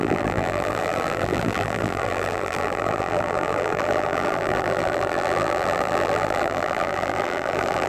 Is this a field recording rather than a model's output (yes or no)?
no